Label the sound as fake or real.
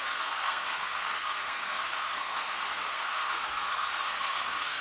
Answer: fake